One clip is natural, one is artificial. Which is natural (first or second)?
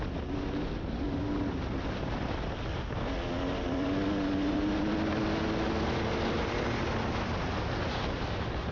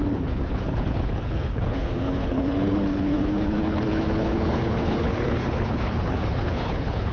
first